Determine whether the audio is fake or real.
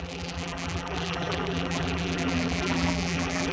fake